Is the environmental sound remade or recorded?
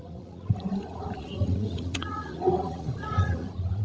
remade